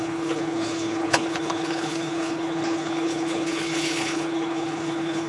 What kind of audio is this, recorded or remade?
remade